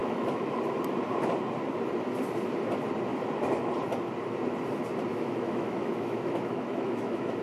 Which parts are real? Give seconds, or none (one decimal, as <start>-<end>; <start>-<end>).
0.6-5.1